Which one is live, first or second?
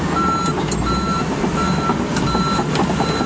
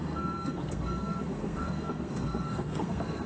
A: first